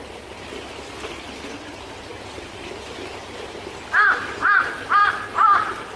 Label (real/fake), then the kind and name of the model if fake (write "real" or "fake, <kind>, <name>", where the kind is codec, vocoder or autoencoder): real